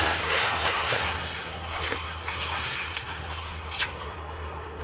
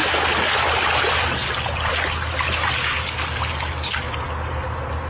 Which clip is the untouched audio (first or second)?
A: second